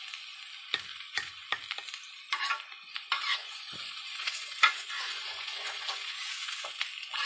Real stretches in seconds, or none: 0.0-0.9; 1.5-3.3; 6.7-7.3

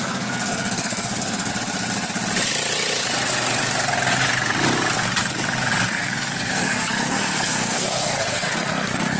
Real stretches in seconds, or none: 1.5-5.9